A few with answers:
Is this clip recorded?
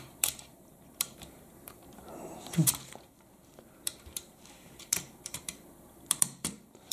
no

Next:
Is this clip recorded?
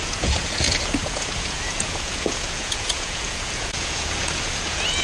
no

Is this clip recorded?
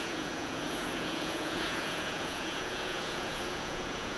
no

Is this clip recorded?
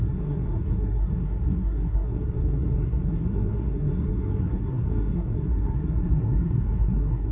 no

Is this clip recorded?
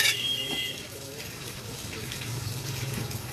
no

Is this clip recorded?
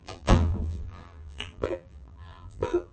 no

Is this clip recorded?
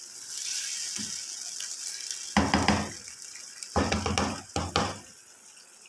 yes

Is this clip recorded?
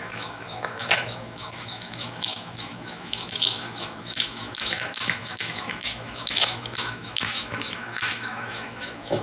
no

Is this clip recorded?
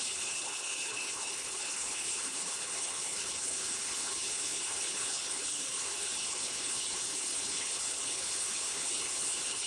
no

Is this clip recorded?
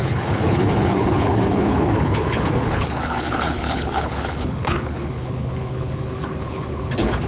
no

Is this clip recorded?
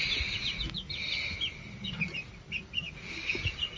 yes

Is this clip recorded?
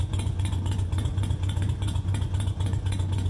no